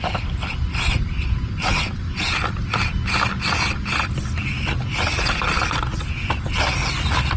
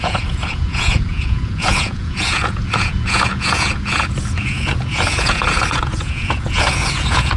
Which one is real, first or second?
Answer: first